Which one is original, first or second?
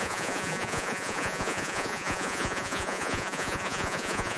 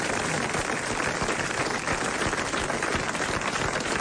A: second